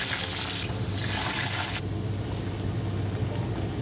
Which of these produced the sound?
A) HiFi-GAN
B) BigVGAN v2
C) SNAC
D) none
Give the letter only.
D